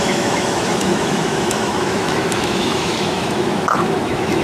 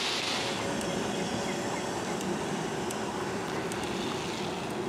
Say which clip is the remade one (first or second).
first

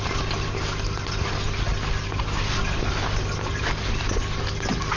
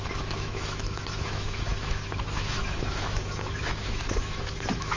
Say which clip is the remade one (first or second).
second